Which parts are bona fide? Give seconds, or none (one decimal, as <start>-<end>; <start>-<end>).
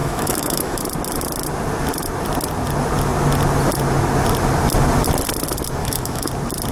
0.8-5.8; 6.3-6.7